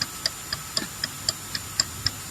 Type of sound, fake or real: real